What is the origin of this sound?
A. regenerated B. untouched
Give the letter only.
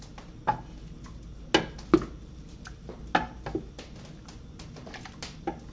B